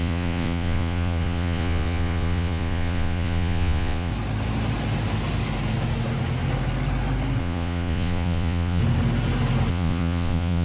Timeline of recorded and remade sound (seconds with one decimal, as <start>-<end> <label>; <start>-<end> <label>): 0.0-4.1 remade; 4.1-7.4 recorded; 7.4-8.8 remade; 8.8-9.7 recorded; 9.7-10.6 remade